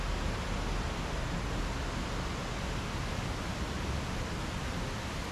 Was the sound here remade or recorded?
recorded